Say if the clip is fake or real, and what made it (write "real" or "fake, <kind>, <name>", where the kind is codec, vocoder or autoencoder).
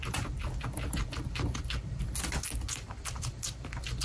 real